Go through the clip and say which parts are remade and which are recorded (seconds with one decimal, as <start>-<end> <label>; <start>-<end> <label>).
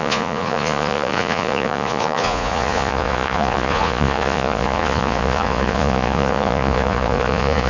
0.0-7.7 remade